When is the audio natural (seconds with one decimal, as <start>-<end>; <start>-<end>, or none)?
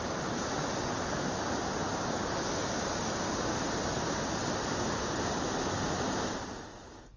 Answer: 0.0-7.2